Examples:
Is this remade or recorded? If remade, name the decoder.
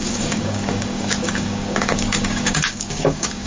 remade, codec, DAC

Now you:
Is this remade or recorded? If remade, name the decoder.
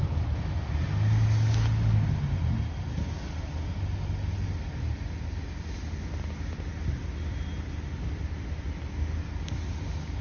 recorded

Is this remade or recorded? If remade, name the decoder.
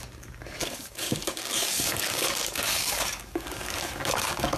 remade, codec, DAC